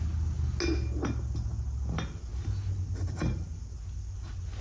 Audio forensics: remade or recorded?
recorded